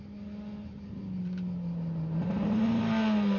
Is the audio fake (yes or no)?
no